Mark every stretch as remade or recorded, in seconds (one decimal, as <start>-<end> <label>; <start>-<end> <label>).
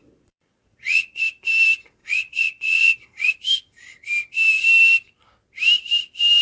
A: 0.0-1.2 remade; 1.2-2.0 recorded; 2.0-3.3 remade; 3.3-6.4 recorded